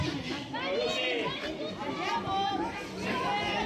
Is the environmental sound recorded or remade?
recorded